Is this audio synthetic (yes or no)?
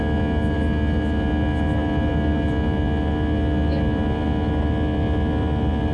no